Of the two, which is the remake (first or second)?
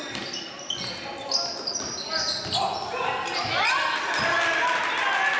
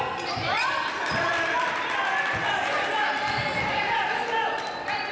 second